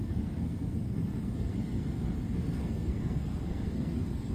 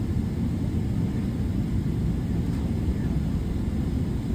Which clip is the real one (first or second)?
second